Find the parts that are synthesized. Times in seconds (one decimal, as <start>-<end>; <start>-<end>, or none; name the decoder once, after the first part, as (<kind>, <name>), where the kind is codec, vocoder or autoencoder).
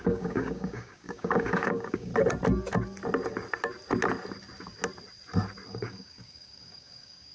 0.0-2.1 (codec, DAC); 5.7-7.3